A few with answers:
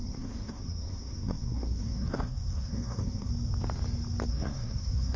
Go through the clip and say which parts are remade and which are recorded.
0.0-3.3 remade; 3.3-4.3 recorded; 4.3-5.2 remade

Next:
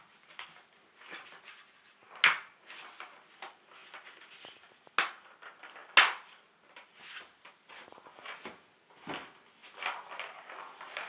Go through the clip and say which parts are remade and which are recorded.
0.0-11.1 recorded

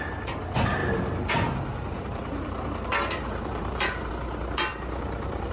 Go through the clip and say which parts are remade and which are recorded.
0.0-0.8 recorded; 0.8-4.1 remade; 4.1-4.7 recorded; 4.7-5.5 remade

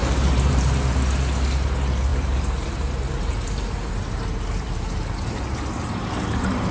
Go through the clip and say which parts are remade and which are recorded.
0.0-1.0 remade; 1.0-2.1 recorded; 2.1-6.1 remade; 6.1-6.7 recorded